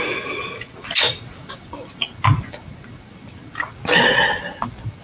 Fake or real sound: real